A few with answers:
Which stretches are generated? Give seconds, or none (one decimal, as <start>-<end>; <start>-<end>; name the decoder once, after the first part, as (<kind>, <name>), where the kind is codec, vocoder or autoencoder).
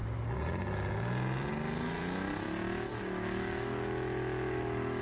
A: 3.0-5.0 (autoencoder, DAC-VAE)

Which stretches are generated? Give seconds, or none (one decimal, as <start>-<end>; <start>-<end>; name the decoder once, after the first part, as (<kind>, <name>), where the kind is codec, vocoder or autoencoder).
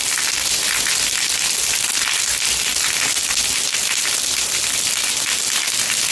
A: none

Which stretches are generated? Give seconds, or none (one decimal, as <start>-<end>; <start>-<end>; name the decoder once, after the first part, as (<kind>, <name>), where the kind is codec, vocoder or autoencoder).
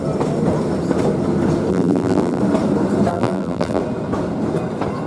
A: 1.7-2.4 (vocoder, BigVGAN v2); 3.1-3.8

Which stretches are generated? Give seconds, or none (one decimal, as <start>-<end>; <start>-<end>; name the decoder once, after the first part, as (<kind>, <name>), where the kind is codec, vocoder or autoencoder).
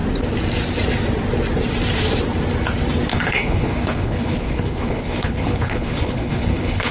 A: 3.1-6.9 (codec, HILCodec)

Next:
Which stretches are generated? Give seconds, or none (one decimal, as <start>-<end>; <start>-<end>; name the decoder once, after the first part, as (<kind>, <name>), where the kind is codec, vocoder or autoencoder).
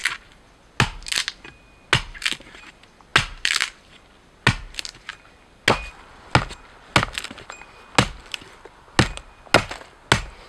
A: none